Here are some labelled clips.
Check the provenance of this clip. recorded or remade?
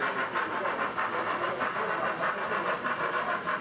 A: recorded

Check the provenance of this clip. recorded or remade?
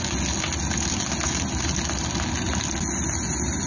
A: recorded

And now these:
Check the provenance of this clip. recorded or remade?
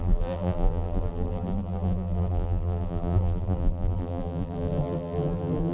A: remade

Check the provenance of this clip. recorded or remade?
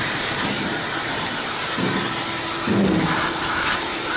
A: remade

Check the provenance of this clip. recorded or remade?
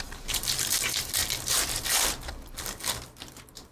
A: remade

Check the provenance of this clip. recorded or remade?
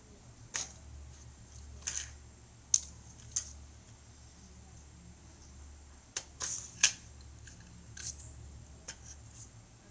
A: recorded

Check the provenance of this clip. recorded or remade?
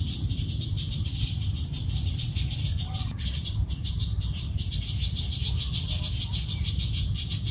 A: recorded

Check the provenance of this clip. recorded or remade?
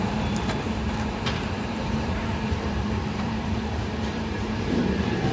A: remade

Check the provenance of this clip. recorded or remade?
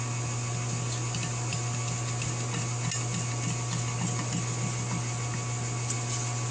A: recorded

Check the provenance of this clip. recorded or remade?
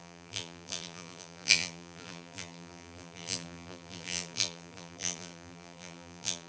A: remade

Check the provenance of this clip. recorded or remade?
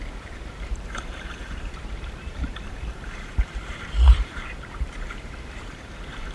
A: remade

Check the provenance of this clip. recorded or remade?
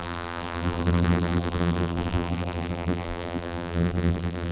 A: remade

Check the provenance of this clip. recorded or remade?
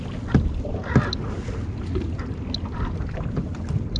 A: recorded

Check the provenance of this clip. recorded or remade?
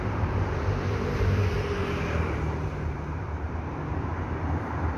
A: remade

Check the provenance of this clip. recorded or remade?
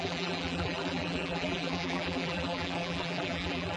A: remade